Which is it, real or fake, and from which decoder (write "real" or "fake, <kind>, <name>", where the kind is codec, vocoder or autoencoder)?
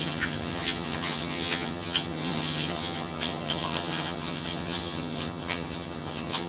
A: fake, vocoder, HiFi-GAN